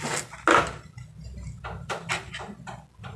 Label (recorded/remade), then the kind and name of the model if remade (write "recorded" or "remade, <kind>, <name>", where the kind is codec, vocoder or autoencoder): recorded